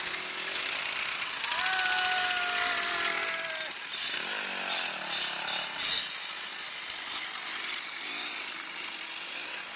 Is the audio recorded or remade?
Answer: recorded